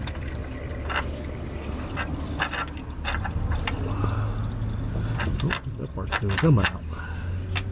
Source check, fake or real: real